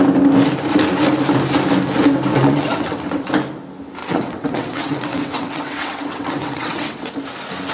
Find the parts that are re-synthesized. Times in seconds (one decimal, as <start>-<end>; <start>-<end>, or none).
2.3-3.3; 4.0-7.1